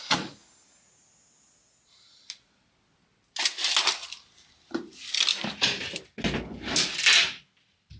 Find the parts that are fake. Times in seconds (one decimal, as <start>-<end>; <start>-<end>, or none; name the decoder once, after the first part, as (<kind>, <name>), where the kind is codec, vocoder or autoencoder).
5.3-5.9 (vocoder, BigVGAN v2)